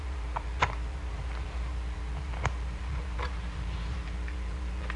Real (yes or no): no